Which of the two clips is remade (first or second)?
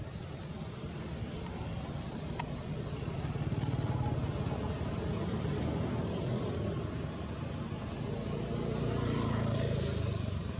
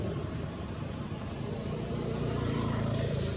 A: second